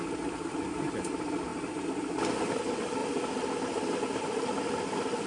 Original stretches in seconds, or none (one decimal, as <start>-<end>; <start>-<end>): 0.0-1.5; 2.6-3.0; 4.6-5.3